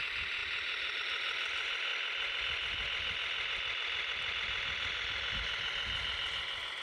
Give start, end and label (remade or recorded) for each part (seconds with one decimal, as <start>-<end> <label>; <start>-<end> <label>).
0.0-1.9 recorded; 1.9-5.3 remade; 5.3-6.8 recorded